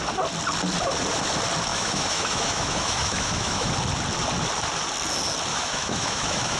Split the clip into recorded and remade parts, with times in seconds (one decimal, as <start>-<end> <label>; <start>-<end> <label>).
0.0-1.7 recorded; 1.7-3.7 remade; 3.7-5.5 recorded; 5.5-6.6 remade